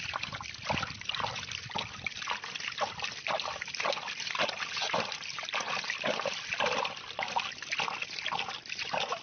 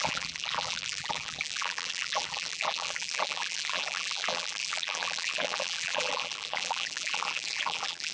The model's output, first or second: second